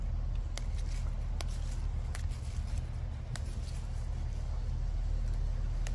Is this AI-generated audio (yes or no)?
no